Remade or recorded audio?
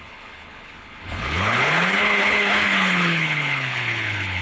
remade